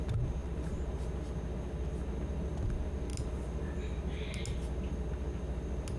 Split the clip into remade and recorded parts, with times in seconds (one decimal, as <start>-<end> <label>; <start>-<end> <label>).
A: 0.0-0.4 recorded; 0.4-0.9 remade; 0.9-6.0 recorded